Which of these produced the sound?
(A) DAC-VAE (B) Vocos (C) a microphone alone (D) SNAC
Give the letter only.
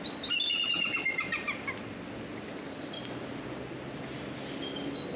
C